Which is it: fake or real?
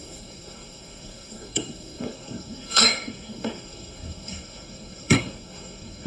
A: fake